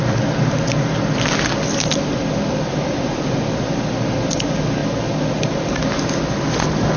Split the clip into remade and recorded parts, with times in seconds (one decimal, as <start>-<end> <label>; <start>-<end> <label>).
0.0-2.7 recorded; 2.7-3.5 remade; 3.5-7.0 recorded